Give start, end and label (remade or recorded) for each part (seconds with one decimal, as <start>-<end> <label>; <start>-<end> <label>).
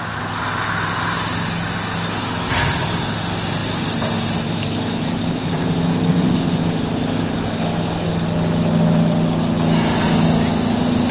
0.0-6.1 recorded; 6.1-6.6 remade; 6.6-11.1 recorded